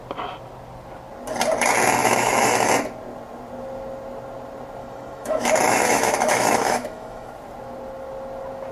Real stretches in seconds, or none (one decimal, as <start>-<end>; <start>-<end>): 0.0-2.0; 2.7-4.8; 7.3-8.7